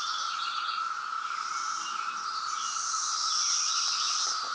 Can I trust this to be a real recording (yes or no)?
no